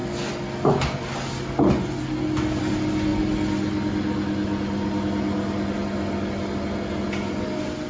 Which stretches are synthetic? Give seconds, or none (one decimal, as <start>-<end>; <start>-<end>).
none